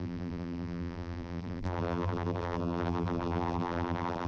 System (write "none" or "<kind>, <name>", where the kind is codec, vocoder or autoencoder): vocoder, BigVGAN v2